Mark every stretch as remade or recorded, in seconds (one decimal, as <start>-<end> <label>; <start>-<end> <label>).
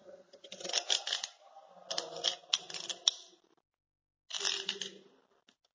0.0-0.7 remade; 0.7-5.7 recorded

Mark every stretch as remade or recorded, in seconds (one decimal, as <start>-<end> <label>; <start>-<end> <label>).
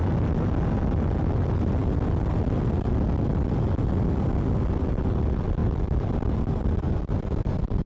0.0-5.6 recorded; 5.6-6.8 remade; 6.8-7.9 recorded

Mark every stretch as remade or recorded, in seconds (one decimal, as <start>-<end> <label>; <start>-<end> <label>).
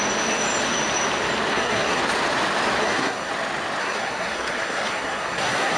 0.0-1.5 recorded; 1.5-2.0 remade; 2.0-2.8 recorded; 2.8-3.3 remade; 3.3-3.8 recorded; 3.8-5.8 remade